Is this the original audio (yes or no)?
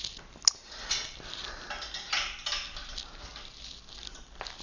yes